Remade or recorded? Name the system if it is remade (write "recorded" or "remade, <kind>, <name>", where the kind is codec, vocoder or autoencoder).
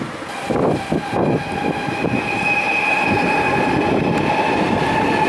recorded